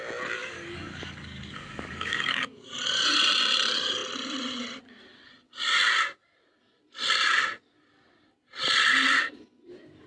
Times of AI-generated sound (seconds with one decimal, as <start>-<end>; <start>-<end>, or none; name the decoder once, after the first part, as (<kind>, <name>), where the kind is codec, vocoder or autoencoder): 0.4-2.7 (codec, DAC)